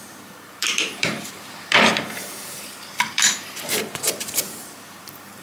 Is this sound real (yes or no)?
no